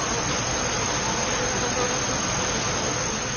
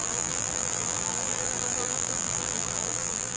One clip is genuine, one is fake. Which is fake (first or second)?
second